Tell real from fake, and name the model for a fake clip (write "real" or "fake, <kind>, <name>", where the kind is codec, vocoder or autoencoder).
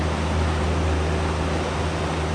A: real